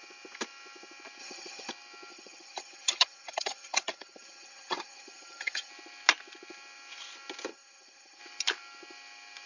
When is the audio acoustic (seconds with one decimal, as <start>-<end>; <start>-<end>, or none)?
0.0-1.2; 1.7-2.1; 5.7-7.5; 8.2-9.5